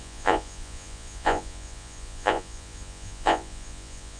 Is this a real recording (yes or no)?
no